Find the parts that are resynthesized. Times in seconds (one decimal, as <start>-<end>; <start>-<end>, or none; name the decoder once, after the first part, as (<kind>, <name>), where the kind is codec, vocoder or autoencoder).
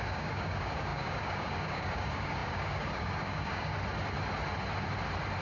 0.0-3.7 (codec, DAC)